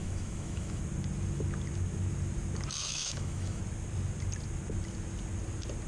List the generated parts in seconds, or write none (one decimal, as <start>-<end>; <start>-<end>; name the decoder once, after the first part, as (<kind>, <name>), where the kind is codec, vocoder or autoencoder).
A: 0.0-0.8 (autoencoder, DAC-VAE); 2.8-3.6